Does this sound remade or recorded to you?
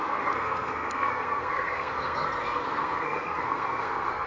remade